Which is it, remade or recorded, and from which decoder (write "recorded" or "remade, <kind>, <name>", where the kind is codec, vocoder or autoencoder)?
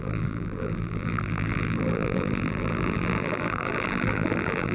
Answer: remade, vocoder, BigVGAN v2